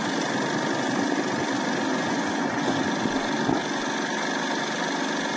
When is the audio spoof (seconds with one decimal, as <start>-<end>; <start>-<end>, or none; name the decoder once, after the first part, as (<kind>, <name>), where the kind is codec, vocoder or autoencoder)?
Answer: 1.9-2.8 (vocoder, Vocos)